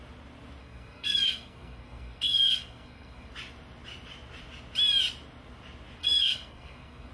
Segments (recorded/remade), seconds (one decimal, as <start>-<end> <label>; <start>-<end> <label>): 0.0-0.6 recorded; 0.6-3.3 remade; 3.3-6.0 recorded; 6.0-7.1 remade